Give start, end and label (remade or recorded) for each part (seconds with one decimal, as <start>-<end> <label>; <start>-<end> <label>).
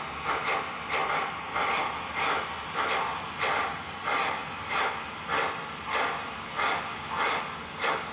0.0-8.1 recorded